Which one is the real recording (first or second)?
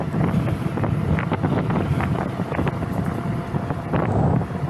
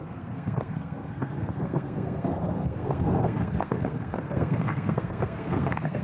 first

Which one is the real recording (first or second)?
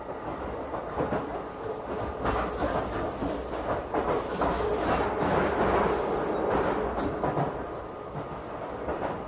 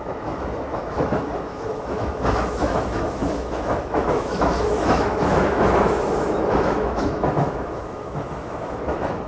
first